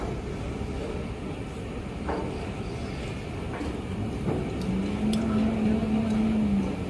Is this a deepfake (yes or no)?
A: no